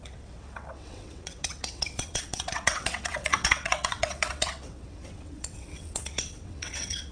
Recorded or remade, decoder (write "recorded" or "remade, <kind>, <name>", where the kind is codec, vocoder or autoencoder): remade, vocoder, WaveNeXt